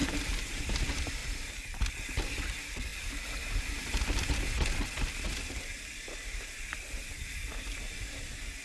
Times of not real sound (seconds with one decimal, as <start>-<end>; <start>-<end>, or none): 0.0-0.7; 1.2-1.9